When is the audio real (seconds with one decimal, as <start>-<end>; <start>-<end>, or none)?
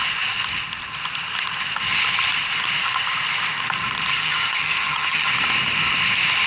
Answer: 0.0-4.1; 5.3-6.5